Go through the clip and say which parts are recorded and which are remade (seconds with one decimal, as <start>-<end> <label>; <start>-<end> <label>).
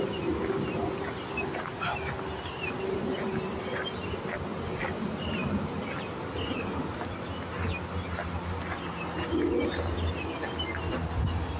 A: 0.0-11.6 recorded